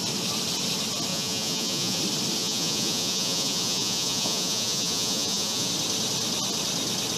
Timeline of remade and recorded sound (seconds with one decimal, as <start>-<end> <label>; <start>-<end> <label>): 0.0-1.1 recorded; 1.1-2.0 remade; 2.0-2.4 recorded; 2.4-5.7 remade; 5.7-7.2 recorded